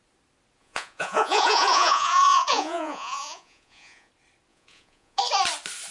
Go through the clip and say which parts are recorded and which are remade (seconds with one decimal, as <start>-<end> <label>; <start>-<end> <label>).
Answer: 0.0-0.6 recorded; 0.6-4.1 remade; 4.1-4.5 recorded; 4.5-5.2 remade; 5.2-5.9 recorded